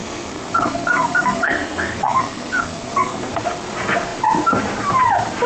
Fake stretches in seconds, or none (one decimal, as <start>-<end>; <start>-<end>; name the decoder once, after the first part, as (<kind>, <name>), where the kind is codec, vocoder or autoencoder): 0.0-3.3 (codec, SNAC)